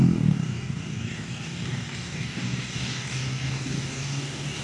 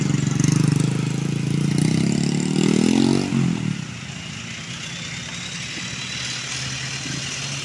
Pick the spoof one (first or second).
first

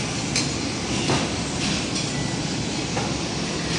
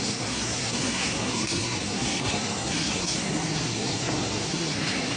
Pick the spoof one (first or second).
second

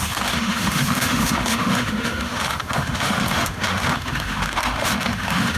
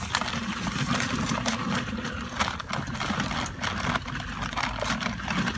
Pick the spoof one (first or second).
first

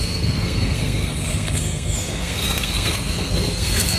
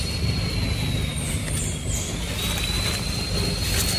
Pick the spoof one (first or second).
first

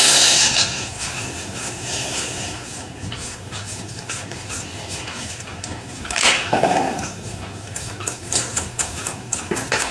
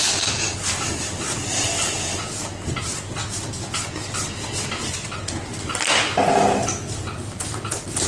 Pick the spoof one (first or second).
first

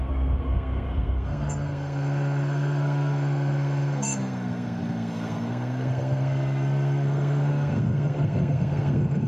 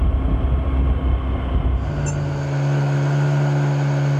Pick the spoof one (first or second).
first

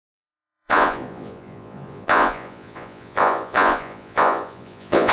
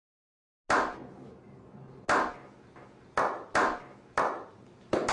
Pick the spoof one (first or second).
first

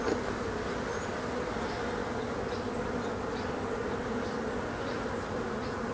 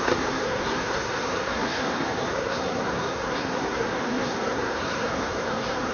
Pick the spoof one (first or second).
second